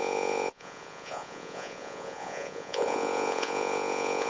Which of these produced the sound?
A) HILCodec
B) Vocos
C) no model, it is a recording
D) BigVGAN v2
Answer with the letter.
B